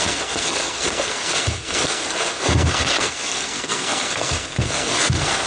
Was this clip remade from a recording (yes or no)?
yes